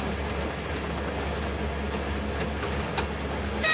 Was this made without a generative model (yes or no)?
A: yes